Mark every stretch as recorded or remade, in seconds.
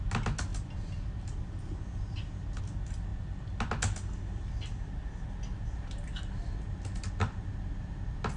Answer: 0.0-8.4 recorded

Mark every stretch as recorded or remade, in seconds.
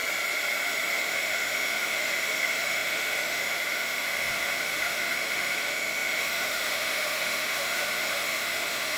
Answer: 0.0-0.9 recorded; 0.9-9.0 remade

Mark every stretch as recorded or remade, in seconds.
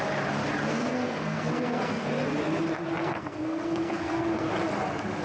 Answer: 0.0-0.7 recorded; 0.7-2.1 remade; 2.1-3.0 recorded; 3.0-4.5 remade; 4.5-5.2 recorded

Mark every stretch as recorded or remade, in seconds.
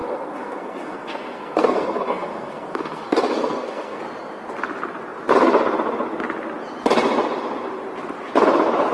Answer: 0.0-4.0 remade; 4.0-8.9 recorded